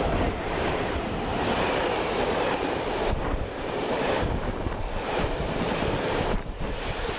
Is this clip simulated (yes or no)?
yes